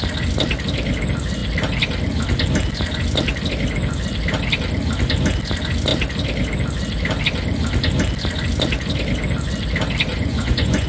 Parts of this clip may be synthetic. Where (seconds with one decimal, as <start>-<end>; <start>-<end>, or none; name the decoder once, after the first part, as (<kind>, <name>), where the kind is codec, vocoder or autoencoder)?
10.1-10.9 (vocoder, Vocos)